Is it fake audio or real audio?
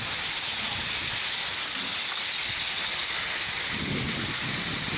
real